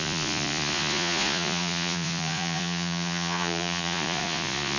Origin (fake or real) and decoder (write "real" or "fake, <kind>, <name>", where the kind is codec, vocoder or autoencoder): fake, vocoder, Vocos